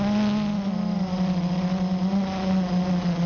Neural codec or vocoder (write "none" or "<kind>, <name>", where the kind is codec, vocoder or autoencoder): none